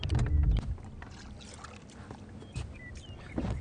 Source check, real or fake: real